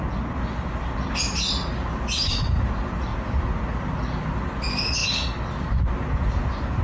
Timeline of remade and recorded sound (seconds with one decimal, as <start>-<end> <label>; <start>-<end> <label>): 0.0-1.9 recorded; 1.9-2.7 remade; 2.7-6.8 recorded